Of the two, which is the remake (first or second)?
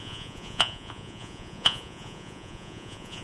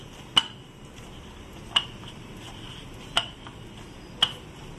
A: first